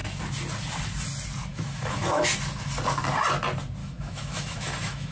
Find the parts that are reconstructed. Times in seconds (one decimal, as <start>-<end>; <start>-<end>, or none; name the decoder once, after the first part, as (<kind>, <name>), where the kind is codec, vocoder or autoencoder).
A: 1.5-2.3 (autoencoder, DAC-VAE); 3.8-5.1